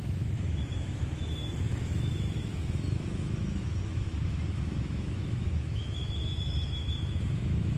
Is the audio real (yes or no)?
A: no